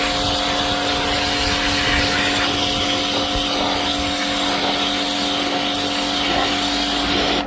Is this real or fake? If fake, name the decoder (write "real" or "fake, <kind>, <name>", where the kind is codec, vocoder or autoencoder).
real